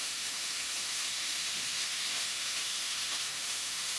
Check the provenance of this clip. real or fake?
fake